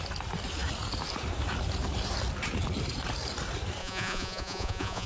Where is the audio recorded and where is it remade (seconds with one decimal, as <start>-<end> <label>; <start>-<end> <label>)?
0.0-3.8 recorded; 3.8-5.1 remade